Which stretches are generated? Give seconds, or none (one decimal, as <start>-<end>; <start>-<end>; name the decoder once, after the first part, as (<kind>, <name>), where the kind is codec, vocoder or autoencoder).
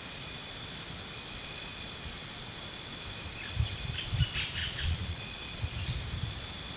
4.6-5.6 (vocoder, Vocos)